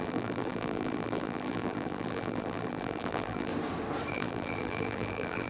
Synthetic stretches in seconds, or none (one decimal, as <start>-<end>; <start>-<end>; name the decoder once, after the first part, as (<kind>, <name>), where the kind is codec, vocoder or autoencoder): 0.0-3.5 (vocoder, BigVGAN v2); 4.1-5.5